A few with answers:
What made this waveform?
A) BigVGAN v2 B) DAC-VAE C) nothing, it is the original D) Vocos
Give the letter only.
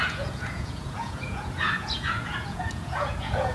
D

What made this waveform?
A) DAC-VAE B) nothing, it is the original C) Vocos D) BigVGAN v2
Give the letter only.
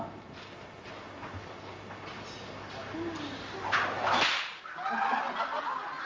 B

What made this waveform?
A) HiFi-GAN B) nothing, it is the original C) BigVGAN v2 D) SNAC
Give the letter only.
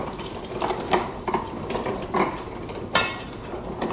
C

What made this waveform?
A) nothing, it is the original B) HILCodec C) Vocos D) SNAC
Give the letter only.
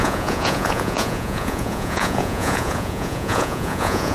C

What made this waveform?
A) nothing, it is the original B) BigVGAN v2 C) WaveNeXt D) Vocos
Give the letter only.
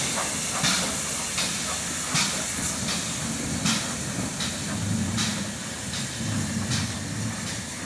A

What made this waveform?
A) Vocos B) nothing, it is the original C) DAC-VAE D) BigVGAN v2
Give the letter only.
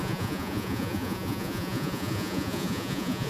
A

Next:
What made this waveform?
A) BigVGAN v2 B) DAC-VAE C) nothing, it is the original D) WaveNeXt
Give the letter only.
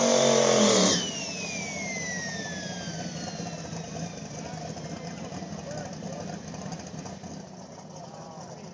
C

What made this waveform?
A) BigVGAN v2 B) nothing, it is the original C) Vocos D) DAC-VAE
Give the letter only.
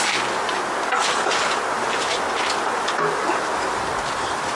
B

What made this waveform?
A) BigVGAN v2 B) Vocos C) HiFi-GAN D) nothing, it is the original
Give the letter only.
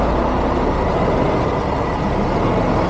D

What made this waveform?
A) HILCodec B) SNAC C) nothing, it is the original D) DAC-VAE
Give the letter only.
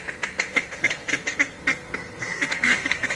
B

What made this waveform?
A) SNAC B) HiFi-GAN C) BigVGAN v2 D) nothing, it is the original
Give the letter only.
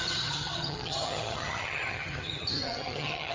B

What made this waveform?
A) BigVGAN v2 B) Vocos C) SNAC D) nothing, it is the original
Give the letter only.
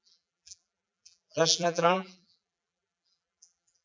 A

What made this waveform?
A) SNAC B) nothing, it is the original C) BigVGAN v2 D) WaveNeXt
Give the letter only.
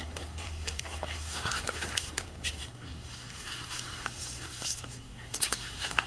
A